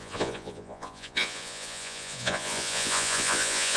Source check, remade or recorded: remade